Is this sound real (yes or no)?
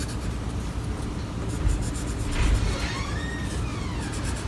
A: yes